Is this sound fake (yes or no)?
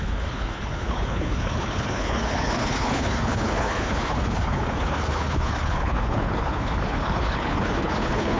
yes